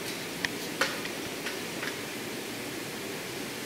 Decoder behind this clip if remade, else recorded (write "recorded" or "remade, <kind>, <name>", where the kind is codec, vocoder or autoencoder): recorded